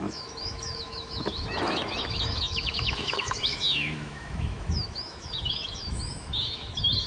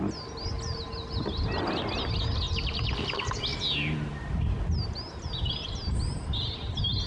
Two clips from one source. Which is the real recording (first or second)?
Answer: second